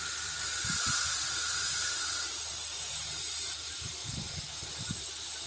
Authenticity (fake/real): fake